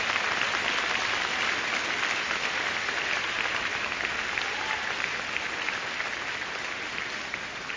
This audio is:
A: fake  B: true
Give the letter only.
B